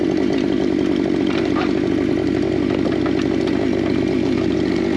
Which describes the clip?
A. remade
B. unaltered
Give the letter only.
B